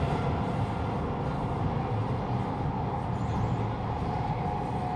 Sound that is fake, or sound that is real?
real